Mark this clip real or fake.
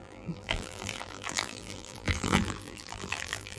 fake